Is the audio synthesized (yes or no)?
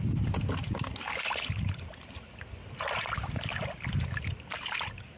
no